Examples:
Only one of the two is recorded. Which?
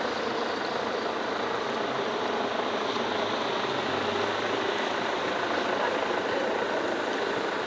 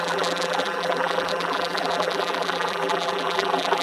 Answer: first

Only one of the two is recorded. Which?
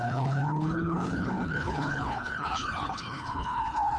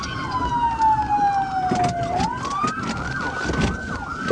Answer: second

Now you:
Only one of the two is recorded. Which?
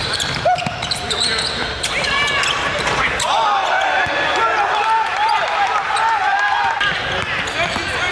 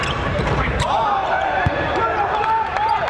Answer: first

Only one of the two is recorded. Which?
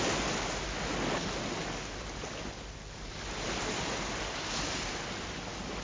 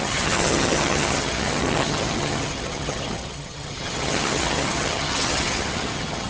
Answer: first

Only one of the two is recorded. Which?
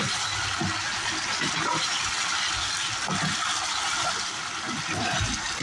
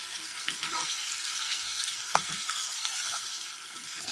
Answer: first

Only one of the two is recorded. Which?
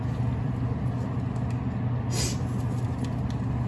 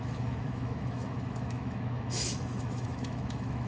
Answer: first